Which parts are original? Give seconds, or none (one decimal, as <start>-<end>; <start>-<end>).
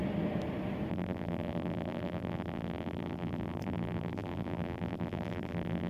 0.0-0.9